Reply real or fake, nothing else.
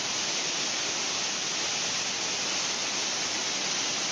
real